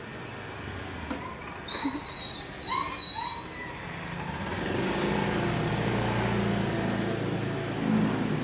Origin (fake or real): real